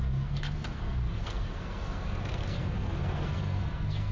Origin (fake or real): fake